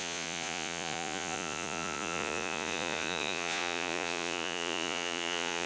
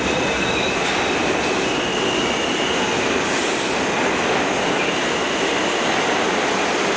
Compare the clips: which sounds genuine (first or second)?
second